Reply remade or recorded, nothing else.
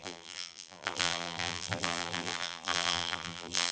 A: remade